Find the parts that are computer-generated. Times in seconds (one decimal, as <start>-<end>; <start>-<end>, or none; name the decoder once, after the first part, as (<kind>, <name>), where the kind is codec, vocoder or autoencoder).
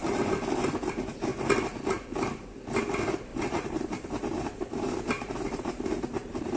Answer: 3.3-6.6 (vocoder, BigVGAN v2)